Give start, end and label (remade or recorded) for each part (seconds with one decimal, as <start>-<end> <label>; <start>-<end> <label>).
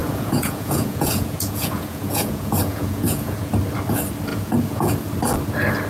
0.0-3.5 remade; 3.5-4.3 recorded; 4.3-5.1 remade; 5.1-5.9 recorded